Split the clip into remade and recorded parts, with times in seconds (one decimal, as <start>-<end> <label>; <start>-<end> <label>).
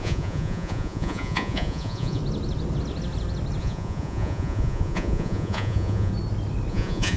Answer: 0.0-2.2 remade; 2.2-3.6 recorded; 3.6-6.1 remade; 6.1-6.7 recorded; 6.7-7.2 remade